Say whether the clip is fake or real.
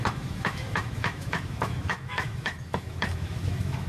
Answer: fake